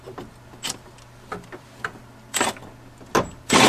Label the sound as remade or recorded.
recorded